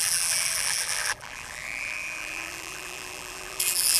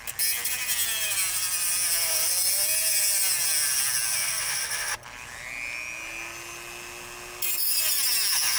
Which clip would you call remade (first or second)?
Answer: first